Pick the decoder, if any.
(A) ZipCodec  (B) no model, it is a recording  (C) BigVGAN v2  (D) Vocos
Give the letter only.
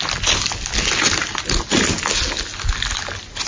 B